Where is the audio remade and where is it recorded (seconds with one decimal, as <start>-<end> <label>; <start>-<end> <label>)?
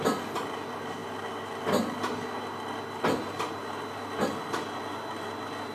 0.0-5.7 recorded